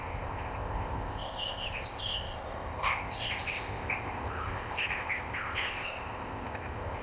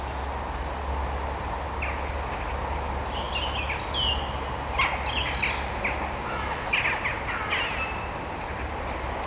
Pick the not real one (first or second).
first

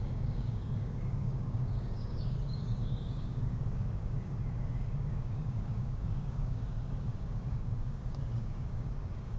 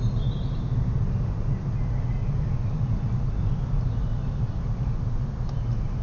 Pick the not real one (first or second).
first